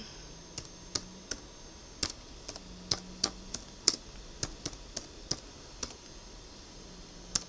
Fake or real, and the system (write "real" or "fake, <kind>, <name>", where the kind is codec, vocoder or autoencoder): real